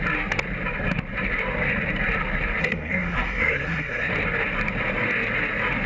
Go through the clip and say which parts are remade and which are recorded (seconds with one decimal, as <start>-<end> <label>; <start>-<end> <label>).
0.0-2.6 recorded; 2.6-4.1 remade; 4.1-5.9 recorded